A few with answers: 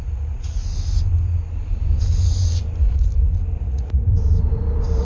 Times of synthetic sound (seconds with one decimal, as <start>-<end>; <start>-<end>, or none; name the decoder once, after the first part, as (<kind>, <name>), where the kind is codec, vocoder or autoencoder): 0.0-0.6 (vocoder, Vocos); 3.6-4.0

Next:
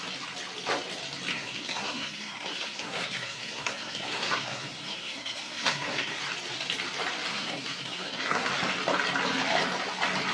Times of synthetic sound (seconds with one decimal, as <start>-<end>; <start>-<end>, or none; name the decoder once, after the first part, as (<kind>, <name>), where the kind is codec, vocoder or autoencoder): 1.3-6.2 (codec, SNAC); 7.3-8.5

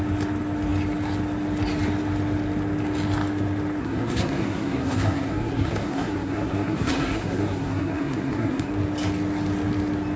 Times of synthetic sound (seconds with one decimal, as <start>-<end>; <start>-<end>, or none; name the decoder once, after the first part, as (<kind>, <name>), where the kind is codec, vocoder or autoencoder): 3.8-8.7 (codec, SNAC)